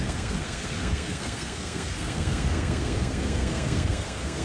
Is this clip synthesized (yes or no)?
yes